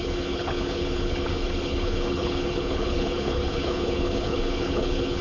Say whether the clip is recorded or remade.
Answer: remade